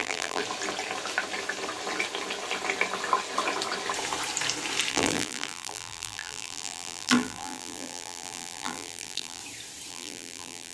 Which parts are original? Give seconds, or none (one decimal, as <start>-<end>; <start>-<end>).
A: 0.4-4.9; 9.4-9.9